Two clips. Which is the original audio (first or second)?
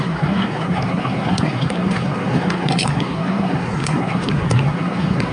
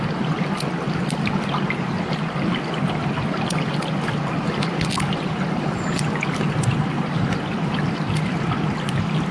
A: second